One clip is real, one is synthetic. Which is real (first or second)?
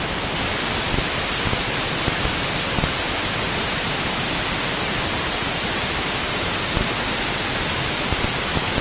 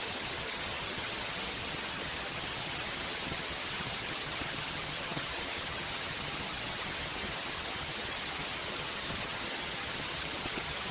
first